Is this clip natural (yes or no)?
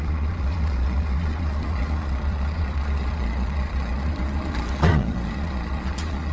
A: no